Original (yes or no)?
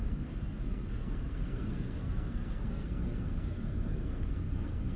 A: no